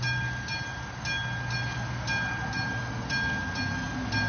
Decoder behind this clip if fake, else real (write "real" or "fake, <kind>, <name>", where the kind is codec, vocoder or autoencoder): real